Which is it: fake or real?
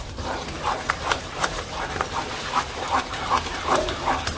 fake